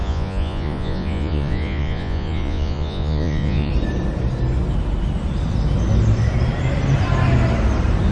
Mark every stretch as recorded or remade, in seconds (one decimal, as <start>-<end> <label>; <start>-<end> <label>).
0.0-3.7 remade; 3.7-8.1 recorded